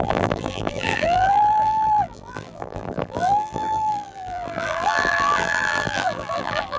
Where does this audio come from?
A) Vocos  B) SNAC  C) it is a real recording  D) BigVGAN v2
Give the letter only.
D